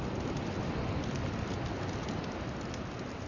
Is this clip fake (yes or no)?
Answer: no